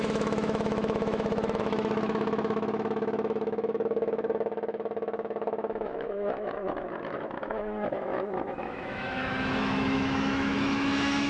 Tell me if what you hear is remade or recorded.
remade